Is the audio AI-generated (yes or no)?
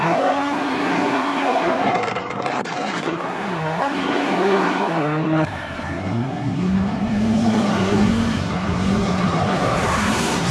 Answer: yes